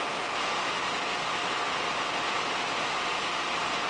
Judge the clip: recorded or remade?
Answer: recorded